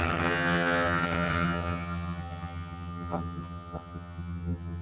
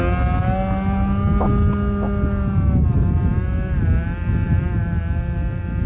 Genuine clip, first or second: second